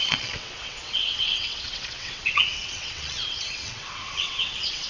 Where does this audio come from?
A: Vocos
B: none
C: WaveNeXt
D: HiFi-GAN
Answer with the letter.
C